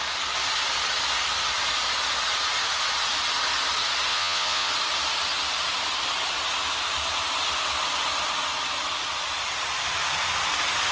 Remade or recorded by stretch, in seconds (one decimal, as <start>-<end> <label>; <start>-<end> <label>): 0.0-4.1 recorded; 4.1-4.7 remade; 4.7-10.9 recorded